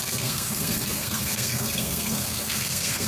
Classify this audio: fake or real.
fake